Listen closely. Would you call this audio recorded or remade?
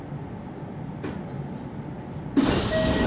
recorded